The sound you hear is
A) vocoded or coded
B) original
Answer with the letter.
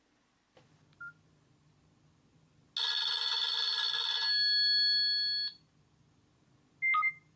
B